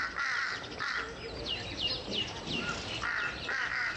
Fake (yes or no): no